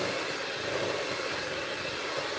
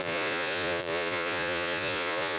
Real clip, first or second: first